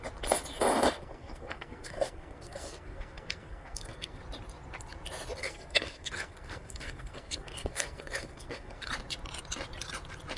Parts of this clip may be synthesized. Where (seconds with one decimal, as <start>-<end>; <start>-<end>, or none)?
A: 1.0-4.2; 5.4-8.9